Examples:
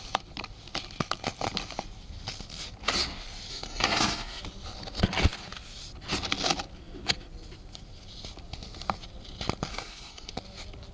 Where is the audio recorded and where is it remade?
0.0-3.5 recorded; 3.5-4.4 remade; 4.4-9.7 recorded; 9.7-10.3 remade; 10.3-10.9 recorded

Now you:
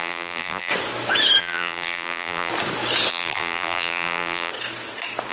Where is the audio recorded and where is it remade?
0.0-0.7 remade; 0.7-1.4 recorded; 1.4-2.5 remade; 2.5-3.1 recorded; 3.1-4.5 remade; 4.5-5.3 recorded

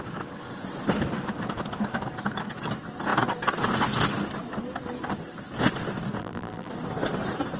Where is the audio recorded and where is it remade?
0.0-6.2 recorded; 6.2-6.7 remade; 6.7-7.6 recorded

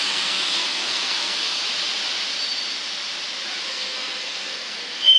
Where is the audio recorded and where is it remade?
0.0-1.6 remade; 1.6-3.7 recorded; 3.7-5.2 remade

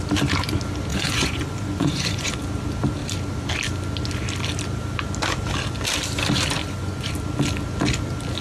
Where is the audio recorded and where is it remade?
0.0-0.9 recorded; 0.9-2.3 remade; 2.3-6.6 recorded; 6.6-7.1 remade; 7.1-8.4 recorded

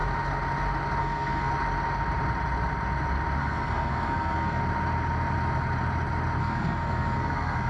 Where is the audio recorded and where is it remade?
0.0-1.0 recorded; 1.0-1.5 remade; 1.5-3.4 recorded; 3.4-4.6 remade; 4.6-6.4 recorded; 6.4-7.7 remade

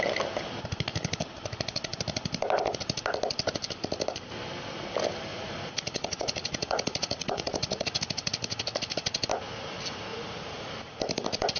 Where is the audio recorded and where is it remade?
0.0-5.3 recorded; 5.3-8.0 remade; 8.0-10.1 recorded; 10.1-10.7 remade; 10.7-11.6 recorded